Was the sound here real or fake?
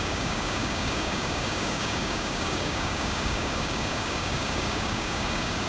fake